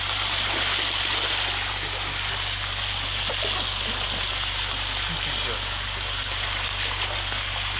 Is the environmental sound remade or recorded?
recorded